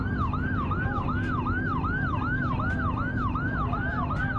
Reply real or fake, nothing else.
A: real